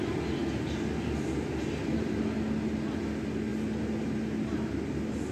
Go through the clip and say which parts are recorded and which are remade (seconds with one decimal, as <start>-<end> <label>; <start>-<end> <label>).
0.0-5.3 recorded